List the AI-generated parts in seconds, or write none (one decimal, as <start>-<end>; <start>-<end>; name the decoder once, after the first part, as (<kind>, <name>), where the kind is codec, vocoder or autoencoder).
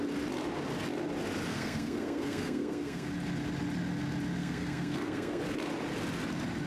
1.5-3.1 (codec, SNAC); 4.4-5.4